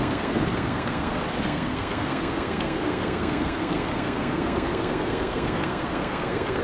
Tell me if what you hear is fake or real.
fake